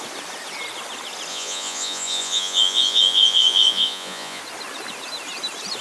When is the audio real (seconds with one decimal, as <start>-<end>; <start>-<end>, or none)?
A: 0.0-1.3; 4.4-5.8